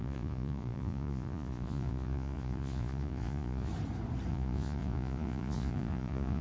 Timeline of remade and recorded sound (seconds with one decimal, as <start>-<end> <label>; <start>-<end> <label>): 0.0-3.7 remade; 3.7-4.3 recorded; 4.3-6.4 remade